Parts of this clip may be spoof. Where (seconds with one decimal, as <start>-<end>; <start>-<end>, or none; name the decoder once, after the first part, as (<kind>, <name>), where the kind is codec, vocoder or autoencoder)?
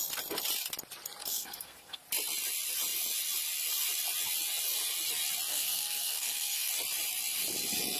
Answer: 1.2-2.0 (codec, SNAC); 5.5-6.7